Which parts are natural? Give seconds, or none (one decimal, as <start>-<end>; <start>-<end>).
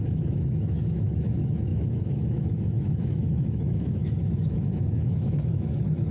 none